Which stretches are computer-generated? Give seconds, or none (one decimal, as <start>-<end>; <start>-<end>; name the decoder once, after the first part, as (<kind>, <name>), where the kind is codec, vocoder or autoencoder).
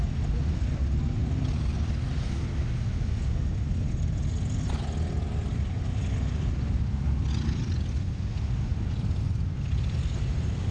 none